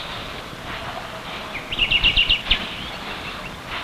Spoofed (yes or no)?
no